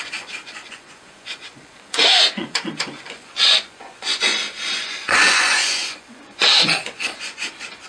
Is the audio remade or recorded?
remade